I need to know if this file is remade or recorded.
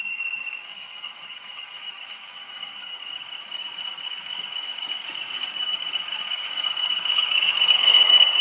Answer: remade